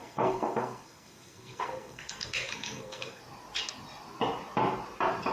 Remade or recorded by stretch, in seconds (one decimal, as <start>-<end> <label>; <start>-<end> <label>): 0.0-3.2 remade; 3.2-5.3 recorded